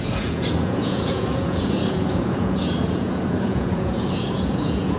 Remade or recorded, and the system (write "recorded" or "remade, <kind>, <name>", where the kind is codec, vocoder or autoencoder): remade, vocoder, Vocos